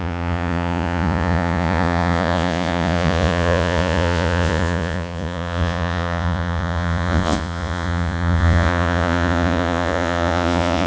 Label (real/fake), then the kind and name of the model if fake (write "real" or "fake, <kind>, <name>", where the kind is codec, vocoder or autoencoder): fake, vocoder, Vocos